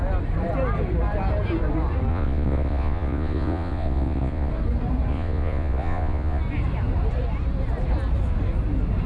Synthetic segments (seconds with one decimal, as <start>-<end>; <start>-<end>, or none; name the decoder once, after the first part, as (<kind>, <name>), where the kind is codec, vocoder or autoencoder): 2.1-4.5 (vocoder, Vocos); 5.1-6.4